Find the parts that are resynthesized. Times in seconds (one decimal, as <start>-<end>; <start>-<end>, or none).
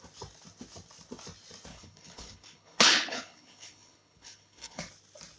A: 1.7-4.9